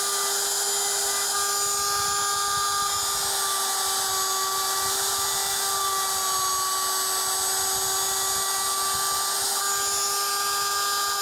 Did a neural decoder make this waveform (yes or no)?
no